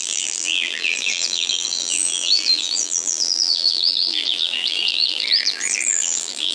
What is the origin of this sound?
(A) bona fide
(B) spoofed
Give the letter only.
B